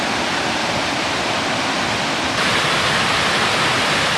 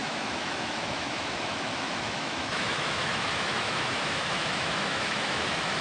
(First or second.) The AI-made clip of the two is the second